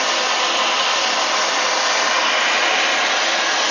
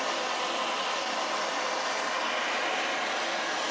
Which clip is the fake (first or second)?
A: second